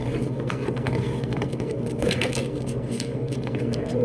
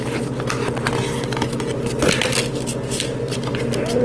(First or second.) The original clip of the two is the second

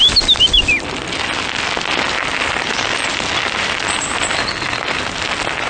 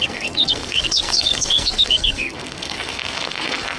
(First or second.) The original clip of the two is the first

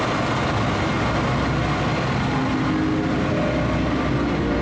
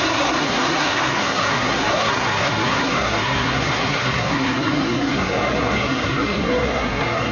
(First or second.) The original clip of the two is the first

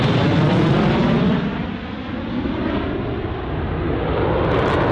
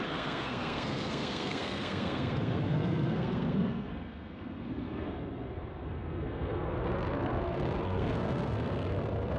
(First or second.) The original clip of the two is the first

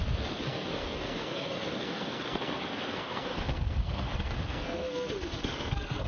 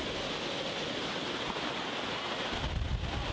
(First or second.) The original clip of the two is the second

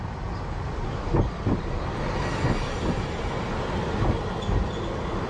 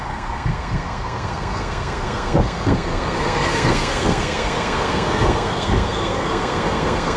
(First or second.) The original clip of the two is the first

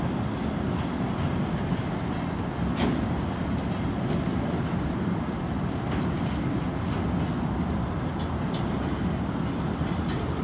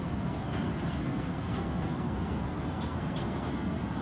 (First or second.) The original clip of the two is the first